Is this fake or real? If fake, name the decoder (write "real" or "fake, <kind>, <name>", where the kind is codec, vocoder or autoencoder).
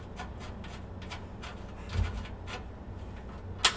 real